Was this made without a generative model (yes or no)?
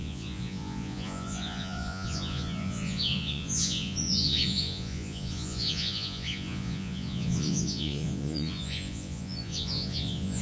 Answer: no